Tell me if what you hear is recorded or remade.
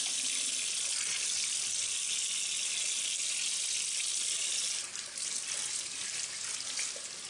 recorded